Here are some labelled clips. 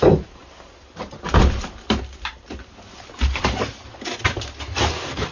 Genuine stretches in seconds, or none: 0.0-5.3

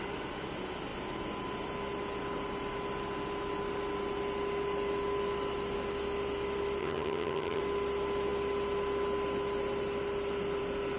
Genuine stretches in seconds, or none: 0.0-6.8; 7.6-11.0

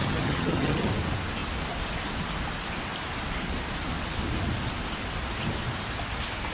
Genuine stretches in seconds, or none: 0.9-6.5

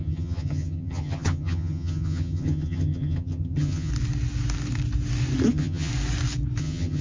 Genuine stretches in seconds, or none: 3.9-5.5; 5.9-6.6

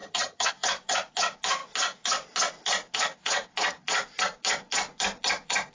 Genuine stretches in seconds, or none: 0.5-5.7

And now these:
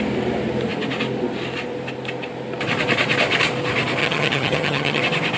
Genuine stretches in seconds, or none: 0.0-4.0; 5.0-5.4

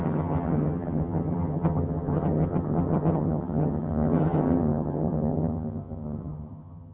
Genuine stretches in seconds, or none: none